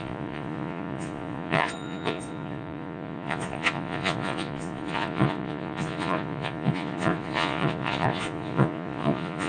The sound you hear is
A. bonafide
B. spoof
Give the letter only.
B